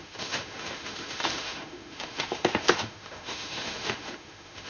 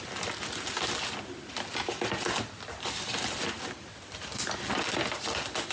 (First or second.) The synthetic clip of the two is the first